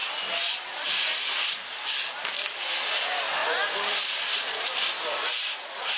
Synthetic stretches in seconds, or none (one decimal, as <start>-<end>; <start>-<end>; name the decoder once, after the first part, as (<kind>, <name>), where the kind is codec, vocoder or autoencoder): 3.4-4.9 (vocoder, BigVGAN v2)

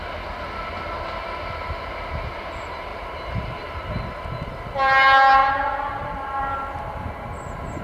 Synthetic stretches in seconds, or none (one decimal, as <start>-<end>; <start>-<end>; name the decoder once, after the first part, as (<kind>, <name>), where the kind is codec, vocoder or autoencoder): 2.9-3.6 (vocoder, BigVGAN v2); 5.4-6.4

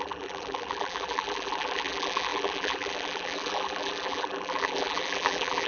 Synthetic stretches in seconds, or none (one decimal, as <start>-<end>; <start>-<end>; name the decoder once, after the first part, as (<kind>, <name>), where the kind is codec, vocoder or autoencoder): 0.0-5.7 (vocoder, BigVGAN v2)

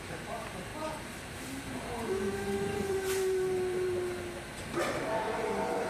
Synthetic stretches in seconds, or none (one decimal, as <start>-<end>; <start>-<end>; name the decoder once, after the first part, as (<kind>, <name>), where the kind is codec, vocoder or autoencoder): 0.7-4.2 (vocoder, BigVGAN v2); 4.8-5.9

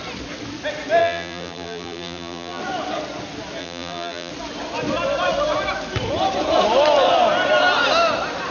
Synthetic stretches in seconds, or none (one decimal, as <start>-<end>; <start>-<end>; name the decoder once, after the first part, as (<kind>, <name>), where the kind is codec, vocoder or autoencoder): 1.0-2.6 (vocoder, BigVGAN v2); 3.6-4.3